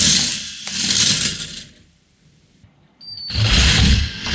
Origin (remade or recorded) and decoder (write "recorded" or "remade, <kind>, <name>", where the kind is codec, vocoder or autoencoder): recorded